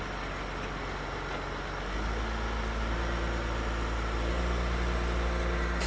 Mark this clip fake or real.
real